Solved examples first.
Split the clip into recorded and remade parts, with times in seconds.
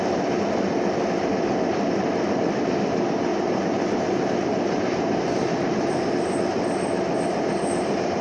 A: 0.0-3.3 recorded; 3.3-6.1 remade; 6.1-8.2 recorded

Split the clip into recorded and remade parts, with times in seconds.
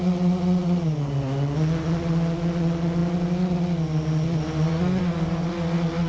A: 0.0-6.1 recorded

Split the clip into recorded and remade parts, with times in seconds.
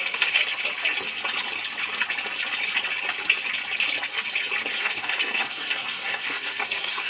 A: 0.0-0.4 remade; 0.4-4.7 recorded; 4.7-7.1 remade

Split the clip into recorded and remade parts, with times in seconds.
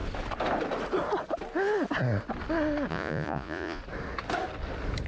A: 0.0-2.9 recorded; 2.9-3.8 remade; 3.8-5.1 recorded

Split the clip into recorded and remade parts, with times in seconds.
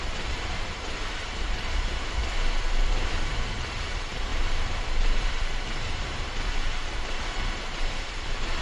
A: 0.0-2.2 remade; 2.2-3.2 recorded; 3.2-8.6 remade